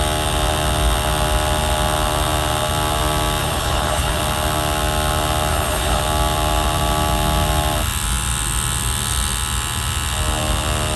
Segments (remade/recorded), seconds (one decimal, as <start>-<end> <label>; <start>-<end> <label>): 0.0-3.4 recorded; 3.4-4.2 remade; 4.2-5.5 recorded; 5.5-6.0 remade; 6.0-11.0 recorded